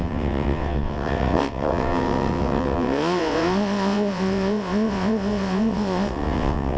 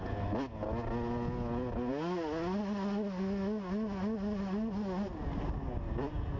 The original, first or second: second